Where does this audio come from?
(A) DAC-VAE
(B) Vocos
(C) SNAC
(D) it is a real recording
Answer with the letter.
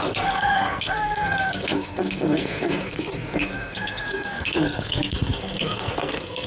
C